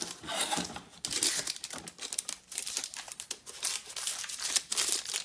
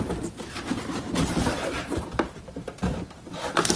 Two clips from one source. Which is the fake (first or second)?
second